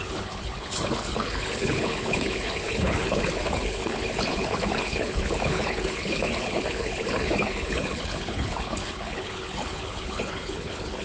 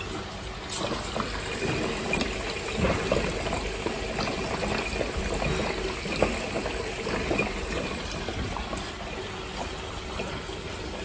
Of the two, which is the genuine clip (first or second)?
second